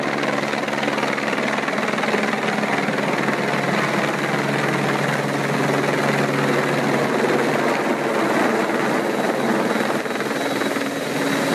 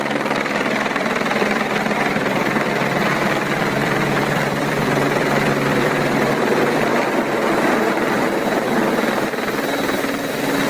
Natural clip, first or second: first